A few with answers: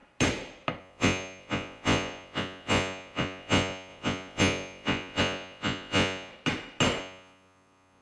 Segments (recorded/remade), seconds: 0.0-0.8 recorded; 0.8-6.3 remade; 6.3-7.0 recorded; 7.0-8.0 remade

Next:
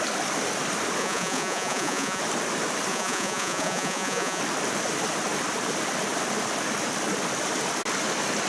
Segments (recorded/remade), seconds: 0.0-1.0 recorded; 1.0-2.2 remade; 2.2-2.9 recorded; 2.9-4.4 remade; 4.4-8.5 recorded

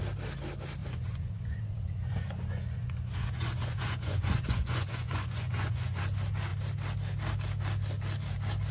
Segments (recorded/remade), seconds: 0.0-0.8 recorded; 0.8-6.0 remade; 6.0-8.7 recorded

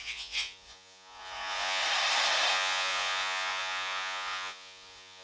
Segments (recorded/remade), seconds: 0.0-1.8 remade; 1.8-2.5 recorded; 2.5-5.2 remade